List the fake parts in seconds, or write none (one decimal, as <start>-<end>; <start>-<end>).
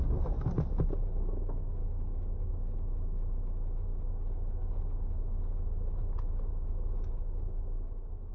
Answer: 1.8-2.5; 7.2-8.3